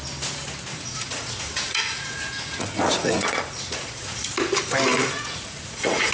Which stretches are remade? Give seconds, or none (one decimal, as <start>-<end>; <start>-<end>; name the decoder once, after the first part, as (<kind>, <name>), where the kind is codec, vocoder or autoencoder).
0.7-4.3 (vocoder, Vocos); 4.9-6.1